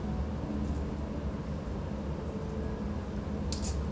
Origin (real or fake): real